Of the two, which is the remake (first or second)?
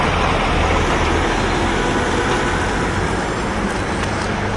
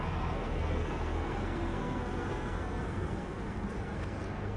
second